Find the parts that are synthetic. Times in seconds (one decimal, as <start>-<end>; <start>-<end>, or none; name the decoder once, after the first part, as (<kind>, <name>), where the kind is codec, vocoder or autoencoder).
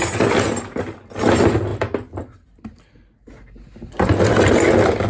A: none